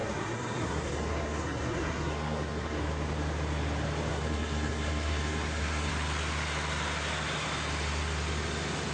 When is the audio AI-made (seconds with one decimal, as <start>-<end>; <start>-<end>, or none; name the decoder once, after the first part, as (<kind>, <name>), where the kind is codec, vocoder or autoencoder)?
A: 0.0-2.8 (codec, SNAC); 4.1-5.9